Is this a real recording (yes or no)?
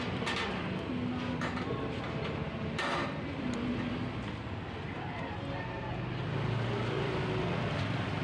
yes